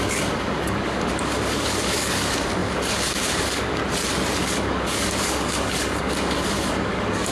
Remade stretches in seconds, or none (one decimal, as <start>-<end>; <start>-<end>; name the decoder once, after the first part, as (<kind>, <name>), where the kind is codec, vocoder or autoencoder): 0.0-3.8 (codec, DAC); 4.4-7.3